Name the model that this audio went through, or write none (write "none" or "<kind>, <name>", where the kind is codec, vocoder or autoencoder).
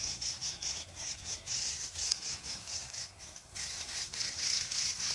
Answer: codec, SNAC